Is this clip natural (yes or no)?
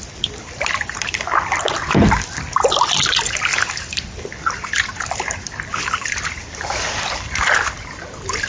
no